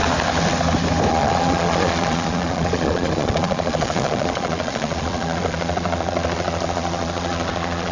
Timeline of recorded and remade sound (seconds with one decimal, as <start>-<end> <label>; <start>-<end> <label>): 0.0-1.1 recorded; 1.1-7.9 remade